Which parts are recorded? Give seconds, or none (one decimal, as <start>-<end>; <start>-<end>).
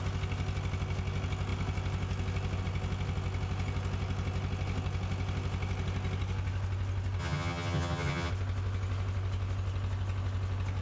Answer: 0.0-7.2; 8.3-10.8